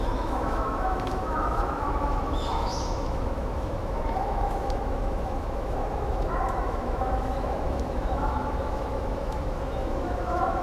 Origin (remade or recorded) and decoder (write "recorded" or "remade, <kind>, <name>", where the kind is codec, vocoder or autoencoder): remade, autoencoder, DAC-VAE